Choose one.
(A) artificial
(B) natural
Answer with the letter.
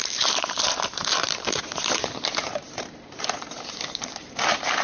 A